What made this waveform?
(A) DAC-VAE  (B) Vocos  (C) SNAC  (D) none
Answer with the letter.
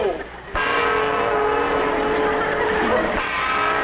D